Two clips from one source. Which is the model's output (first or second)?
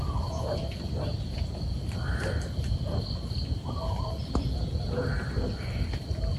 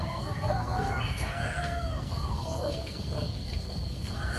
second